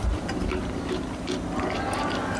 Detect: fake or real real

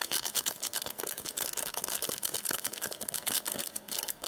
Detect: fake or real fake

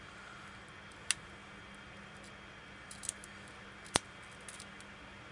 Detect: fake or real real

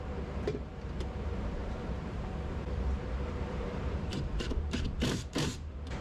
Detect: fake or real fake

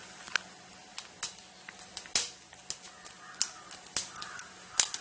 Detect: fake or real real